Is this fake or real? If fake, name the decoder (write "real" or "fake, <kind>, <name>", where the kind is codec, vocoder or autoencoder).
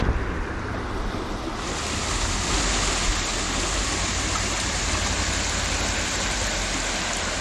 real